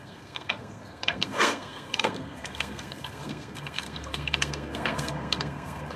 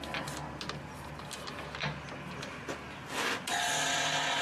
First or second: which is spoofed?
first